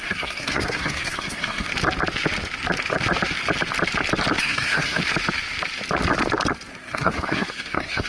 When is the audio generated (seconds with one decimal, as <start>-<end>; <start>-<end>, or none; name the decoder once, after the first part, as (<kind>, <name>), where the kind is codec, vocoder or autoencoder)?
0.0-1.7 (codec, SNAC); 4.4-5.0; 6.7-8.1